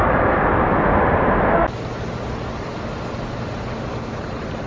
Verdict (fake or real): real